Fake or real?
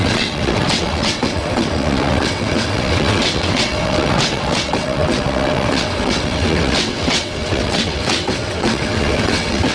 fake